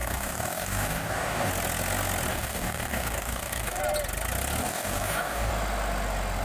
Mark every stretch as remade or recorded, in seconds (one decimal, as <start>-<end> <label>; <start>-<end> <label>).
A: 0.0-1.5 remade; 1.5-2.3 recorded; 2.3-3.8 remade; 3.8-4.6 recorded; 4.6-5.5 remade; 5.5-6.4 recorded